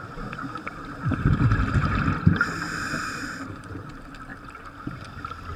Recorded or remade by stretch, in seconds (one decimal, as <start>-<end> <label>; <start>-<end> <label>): 0.0-2.3 remade; 2.3-3.0 recorded; 3.0-4.3 remade; 4.3-5.6 recorded